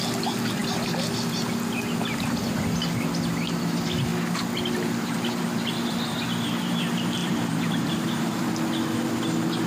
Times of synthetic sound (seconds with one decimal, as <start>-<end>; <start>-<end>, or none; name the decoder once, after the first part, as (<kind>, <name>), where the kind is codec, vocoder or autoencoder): 7.2-8.5 (vocoder, BigVGAN v2)